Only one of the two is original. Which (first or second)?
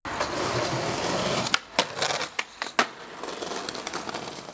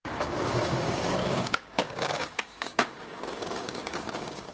first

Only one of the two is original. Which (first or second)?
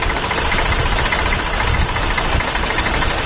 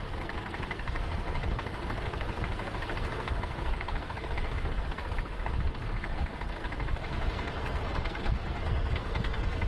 first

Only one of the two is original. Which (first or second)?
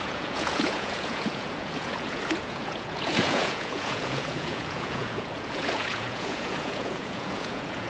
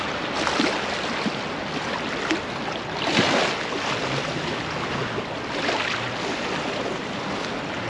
second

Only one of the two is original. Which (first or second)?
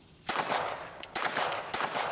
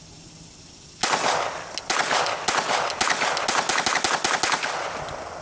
second